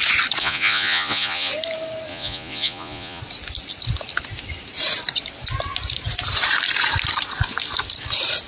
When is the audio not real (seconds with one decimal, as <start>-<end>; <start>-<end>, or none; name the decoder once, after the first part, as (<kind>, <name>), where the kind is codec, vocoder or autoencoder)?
0.4-1.5 (vocoder, Vocos); 2.1-3.2